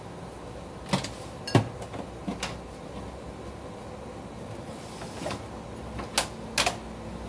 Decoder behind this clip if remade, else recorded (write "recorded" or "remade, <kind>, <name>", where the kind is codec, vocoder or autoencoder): recorded